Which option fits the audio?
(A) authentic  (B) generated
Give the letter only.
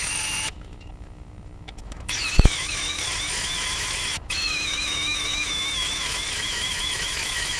B